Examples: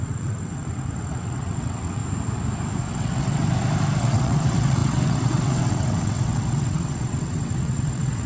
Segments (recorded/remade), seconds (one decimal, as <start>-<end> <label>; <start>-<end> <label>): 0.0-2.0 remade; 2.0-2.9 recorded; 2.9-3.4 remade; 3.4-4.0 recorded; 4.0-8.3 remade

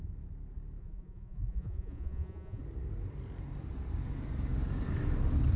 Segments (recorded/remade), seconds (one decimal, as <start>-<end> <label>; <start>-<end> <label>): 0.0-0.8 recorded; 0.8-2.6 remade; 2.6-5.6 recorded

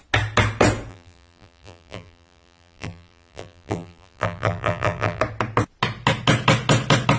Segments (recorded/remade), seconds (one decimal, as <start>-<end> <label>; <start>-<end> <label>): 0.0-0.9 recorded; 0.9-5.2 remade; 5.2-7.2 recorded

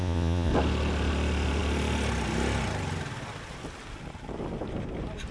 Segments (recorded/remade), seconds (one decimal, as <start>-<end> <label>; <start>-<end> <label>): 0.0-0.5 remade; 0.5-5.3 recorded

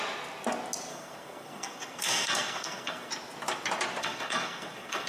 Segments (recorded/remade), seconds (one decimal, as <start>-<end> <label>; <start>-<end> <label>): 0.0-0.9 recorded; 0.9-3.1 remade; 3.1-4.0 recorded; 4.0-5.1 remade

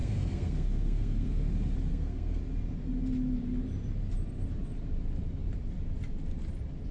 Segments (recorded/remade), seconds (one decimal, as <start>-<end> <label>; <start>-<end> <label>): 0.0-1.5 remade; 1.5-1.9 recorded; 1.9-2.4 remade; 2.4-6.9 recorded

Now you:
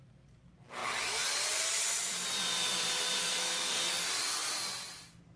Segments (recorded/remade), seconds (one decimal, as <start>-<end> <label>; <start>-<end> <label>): 0.0-3.2 recorded; 3.2-3.9 remade; 3.9-5.4 recorded

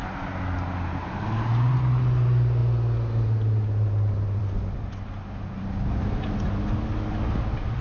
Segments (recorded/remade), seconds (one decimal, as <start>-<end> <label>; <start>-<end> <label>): 0.0-7.8 recorded